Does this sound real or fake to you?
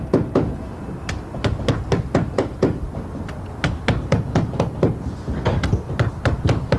real